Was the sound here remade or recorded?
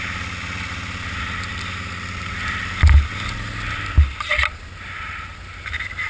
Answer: recorded